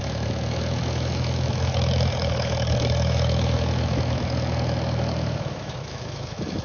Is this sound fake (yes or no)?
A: yes